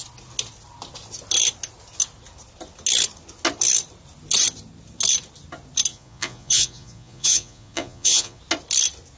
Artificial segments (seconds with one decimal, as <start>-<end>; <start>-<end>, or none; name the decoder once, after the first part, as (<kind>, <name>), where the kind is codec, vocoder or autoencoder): 5.9-8.4 (vocoder, Vocos)